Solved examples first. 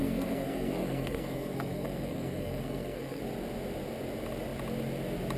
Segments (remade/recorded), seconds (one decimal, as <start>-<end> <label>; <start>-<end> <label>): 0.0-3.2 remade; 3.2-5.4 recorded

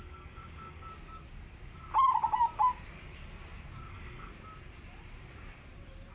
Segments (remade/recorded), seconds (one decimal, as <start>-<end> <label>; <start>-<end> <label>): 0.0-0.9 remade; 0.9-3.9 recorded; 3.9-4.3 remade; 4.3-6.1 recorded

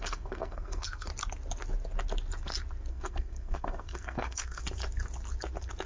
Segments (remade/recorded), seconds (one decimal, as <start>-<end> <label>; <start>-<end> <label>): 0.0-1.1 remade; 1.1-2.9 recorded; 2.9-4.6 remade; 4.6-5.9 recorded

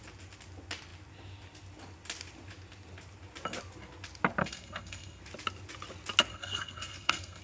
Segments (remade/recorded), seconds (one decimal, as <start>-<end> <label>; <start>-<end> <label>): 0.0-4.4 recorded; 4.4-5.2 remade; 5.2-6.3 recorded; 6.3-7.4 remade

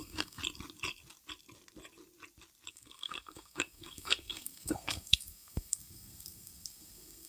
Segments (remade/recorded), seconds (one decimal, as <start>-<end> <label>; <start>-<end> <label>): 0.0-0.4 remade; 0.4-2.7 recorded; 2.7-7.3 remade

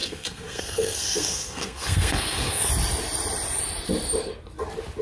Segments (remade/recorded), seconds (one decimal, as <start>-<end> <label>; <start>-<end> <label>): 0.0-2.7 remade; 2.7-5.0 recorded

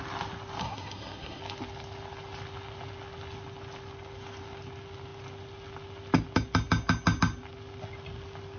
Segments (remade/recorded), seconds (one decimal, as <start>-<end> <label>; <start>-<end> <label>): 0.0-0.6 recorded; 0.6-1.4 remade; 1.4-8.6 recorded